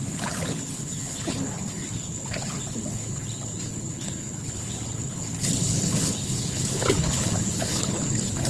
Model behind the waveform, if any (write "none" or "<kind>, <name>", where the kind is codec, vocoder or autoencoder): codec, HILCodec